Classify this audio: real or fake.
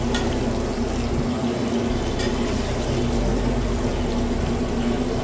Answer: real